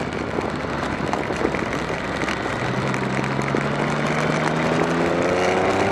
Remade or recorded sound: recorded